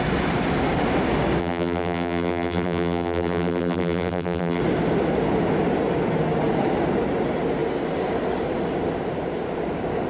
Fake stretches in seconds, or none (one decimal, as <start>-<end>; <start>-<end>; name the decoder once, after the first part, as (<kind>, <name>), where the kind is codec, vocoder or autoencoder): 1.4-4.6 (vocoder, BigVGAN v2)